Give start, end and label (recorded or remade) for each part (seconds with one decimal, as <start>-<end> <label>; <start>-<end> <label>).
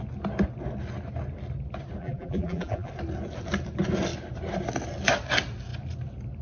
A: 0.0-2.0 recorded; 2.0-2.9 remade; 2.9-6.4 recorded